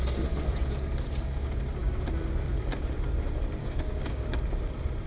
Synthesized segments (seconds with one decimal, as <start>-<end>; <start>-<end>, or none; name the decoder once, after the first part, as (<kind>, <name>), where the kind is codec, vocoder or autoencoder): 3.6-4.4 (codec, DAC)